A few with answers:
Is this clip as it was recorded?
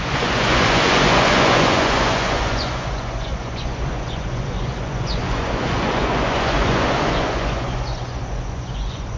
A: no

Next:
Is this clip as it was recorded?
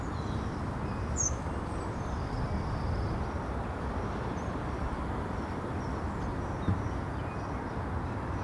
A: yes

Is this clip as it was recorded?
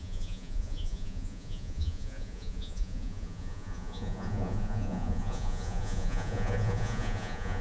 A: no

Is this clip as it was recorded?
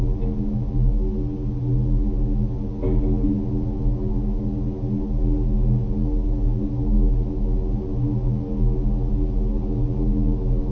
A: yes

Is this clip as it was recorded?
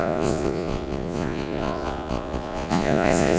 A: no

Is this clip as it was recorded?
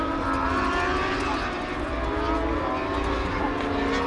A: yes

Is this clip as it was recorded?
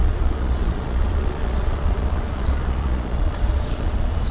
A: no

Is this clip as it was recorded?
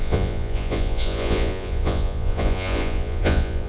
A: no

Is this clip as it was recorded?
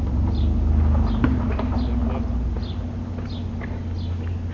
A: yes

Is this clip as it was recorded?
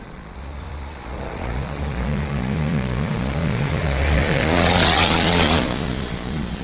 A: no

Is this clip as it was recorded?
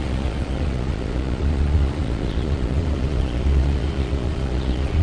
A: no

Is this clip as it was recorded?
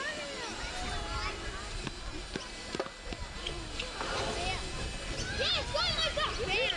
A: yes